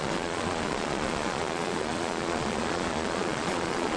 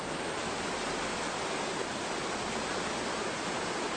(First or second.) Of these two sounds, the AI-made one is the first